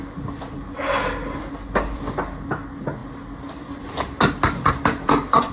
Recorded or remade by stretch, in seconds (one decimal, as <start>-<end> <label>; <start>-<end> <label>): 0.0-5.5 recorded